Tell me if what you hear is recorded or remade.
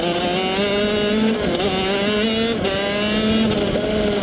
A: recorded